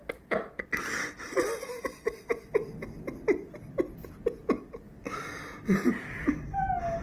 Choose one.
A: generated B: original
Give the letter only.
B